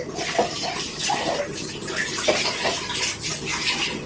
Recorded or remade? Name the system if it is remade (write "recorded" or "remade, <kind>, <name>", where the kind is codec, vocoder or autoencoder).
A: recorded